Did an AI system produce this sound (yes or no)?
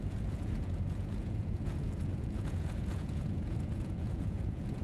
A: yes